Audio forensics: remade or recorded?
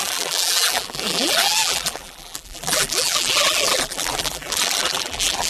remade